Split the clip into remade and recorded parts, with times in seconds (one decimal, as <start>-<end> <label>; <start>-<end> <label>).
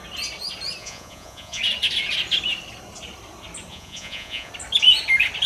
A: 0.0-0.8 recorded; 0.8-1.6 remade; 1.6-3.7 recorded; 3.7-4.5 remade; 4.5-5.5 recorded